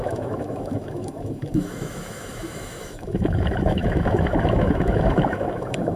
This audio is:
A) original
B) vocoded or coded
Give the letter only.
B